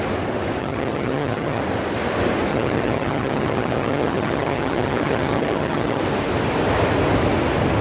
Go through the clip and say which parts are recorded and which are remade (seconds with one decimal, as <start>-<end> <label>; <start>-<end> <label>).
0.0-0.6 recorded; 0.6-1.6 remade; 1.6-2.5 recorded; 2.5-6.0 remade; 6.0-7.8 recorded